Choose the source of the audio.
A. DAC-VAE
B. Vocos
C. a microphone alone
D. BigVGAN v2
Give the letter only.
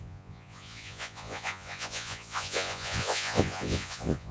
B